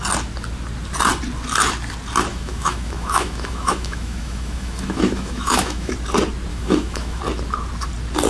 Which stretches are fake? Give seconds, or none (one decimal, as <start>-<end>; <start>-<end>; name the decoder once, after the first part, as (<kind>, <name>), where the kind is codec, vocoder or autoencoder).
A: 2.3-5.9 (autoencoder, DAC-VAE); 6.5-7.2